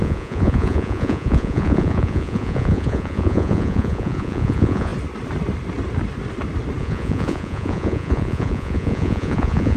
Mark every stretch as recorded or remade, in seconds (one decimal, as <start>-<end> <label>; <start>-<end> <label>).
0.0-4.9 remade; 4.9-6.8 recorded; 6.8-9.8 remade